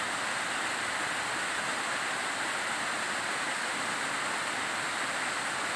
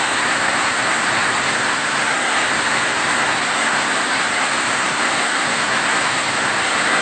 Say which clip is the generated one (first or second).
second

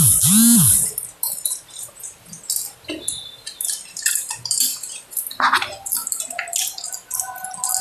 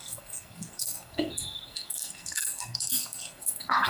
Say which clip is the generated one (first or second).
second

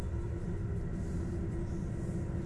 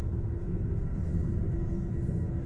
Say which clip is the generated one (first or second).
second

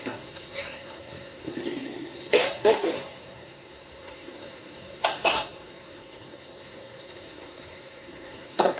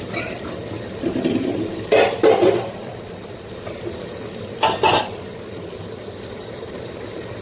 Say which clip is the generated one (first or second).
first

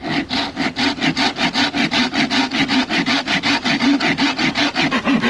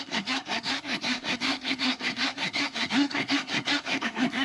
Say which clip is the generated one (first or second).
second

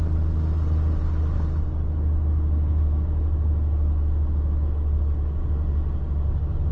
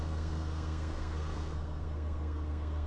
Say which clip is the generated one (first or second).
second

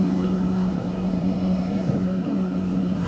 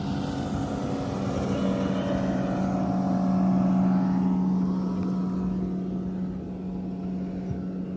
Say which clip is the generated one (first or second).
first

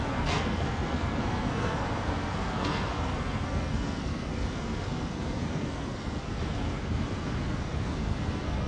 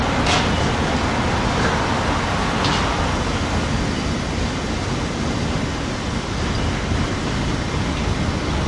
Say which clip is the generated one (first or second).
first